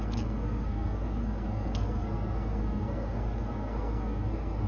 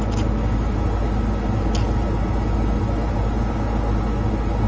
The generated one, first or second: first